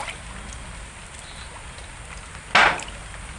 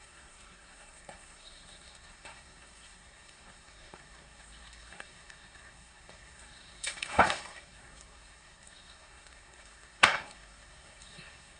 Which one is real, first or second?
first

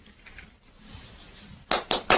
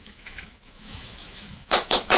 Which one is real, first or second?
first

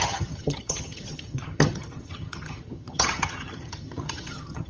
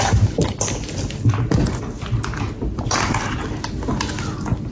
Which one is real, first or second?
second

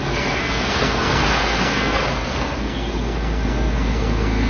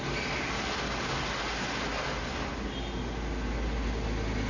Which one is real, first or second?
second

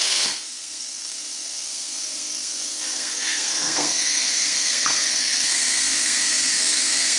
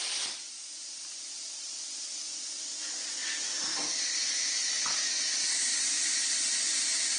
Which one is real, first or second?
second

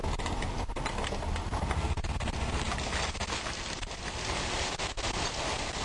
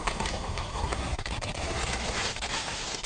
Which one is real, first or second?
first